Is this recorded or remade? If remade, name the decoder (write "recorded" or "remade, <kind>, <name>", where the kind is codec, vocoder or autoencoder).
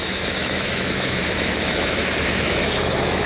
remade, autoencoder, DAC-VAE